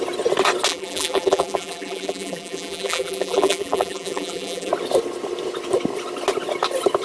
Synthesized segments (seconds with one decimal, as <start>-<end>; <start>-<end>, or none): 0.7-4.7